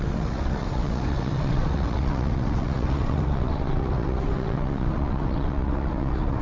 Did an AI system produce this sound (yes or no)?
yes